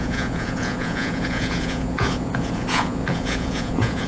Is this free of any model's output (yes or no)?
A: no